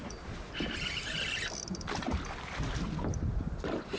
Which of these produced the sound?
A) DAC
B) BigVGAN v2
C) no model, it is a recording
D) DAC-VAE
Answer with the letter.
C